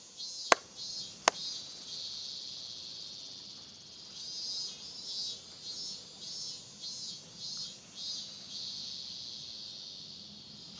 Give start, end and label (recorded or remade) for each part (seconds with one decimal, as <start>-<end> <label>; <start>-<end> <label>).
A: 0.0-10.8 recorded